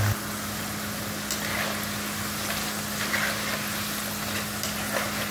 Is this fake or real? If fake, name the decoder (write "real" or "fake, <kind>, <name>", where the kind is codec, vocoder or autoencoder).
real